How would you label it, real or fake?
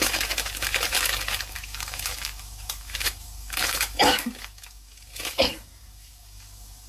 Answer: fake